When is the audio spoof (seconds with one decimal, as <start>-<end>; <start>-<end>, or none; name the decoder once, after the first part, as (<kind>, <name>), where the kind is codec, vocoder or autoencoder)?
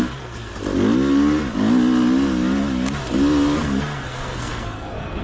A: 0.0-0.5 (codec, SNAC); 3.6-5.2